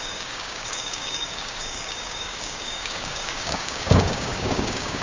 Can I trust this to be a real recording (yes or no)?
no